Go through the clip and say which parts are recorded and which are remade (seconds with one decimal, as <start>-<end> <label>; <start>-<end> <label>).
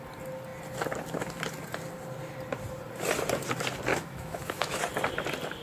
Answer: 0.0-3.9 recorded; 3.9-4.8 remade; 4.8-5.6 recorded